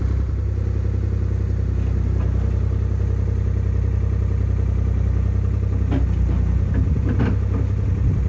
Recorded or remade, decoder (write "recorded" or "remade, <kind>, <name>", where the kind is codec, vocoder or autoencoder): recorded